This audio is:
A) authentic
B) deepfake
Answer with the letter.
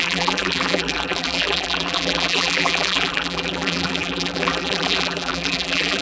B